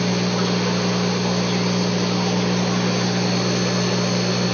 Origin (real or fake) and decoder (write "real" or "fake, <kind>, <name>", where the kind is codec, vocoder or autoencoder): real